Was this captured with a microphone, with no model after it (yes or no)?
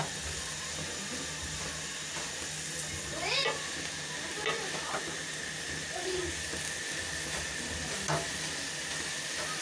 yes